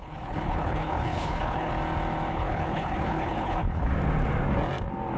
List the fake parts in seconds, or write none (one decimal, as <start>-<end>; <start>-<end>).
0.0-1.7; 2.3-3.9